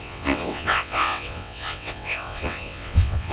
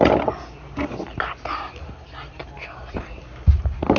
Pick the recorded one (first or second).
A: second